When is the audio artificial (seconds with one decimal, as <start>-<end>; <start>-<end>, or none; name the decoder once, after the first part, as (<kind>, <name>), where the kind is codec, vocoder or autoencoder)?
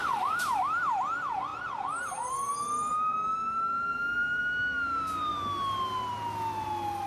0.0-0.9 (vocoder, BigVGAN v2); 2.9-4.4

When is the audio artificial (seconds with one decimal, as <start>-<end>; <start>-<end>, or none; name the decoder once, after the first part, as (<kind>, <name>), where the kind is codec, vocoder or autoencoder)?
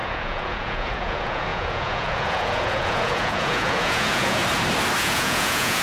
0.0-4.4 (vocoder, Vocos); 5.0-5.8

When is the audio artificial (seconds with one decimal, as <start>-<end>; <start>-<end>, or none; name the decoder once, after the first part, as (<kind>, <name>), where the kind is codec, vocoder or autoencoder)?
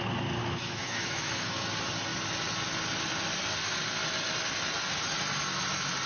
0.4-1.6 (autoencoder, DAC-VAE)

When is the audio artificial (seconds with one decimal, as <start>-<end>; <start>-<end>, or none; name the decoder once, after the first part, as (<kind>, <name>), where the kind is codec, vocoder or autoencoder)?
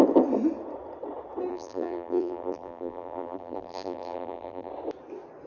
1.5-4.7 (vocoder, BigVGAN v2)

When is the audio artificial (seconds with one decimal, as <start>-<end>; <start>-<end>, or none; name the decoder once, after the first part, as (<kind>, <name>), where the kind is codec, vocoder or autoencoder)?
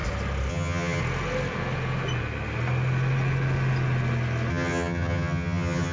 0.5-1.0 (vocoder, HiFi-GAN); 4.5-5.9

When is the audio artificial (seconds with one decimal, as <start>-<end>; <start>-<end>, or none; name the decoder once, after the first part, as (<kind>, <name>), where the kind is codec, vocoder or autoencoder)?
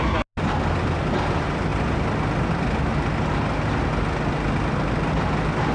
none